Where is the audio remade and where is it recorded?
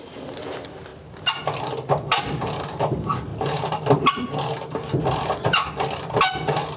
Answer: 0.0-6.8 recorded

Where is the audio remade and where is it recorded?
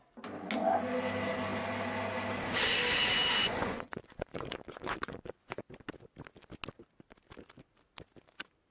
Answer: 0.0-3.4 recorded; 3.4-5.6 remade; 5.6-8.7 recorded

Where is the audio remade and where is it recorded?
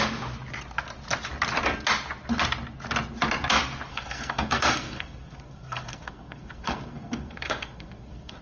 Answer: 0.0-3.9 recorded; 3.9-8.4 remade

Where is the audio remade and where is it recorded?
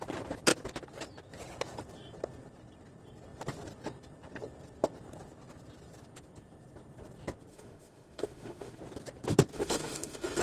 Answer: 0.0-7.5 recorded; 7.5-8.8 remade; 8.8-9.5 recorded; 9.5-10.4 remade